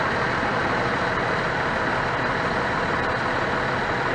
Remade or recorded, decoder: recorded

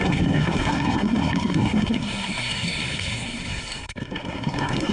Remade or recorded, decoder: remade, codec, SNAC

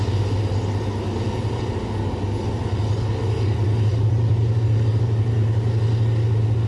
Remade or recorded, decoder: recorded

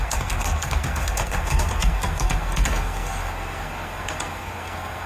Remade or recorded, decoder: remade, codec, SNAC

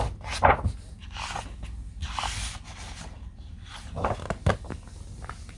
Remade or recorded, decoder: recorded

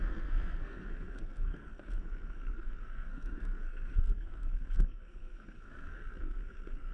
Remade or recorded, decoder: remade, codec, SNAC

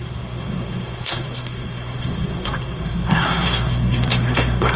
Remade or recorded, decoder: remade, codec, SNAC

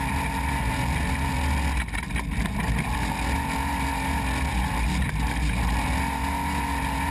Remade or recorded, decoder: recorded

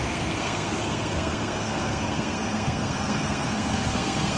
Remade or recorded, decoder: remade, codec, SNAC